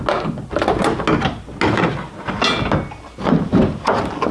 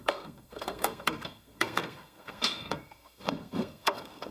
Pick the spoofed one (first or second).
second